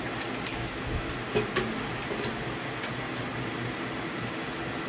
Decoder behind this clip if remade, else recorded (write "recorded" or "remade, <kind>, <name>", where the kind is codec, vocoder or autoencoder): recorded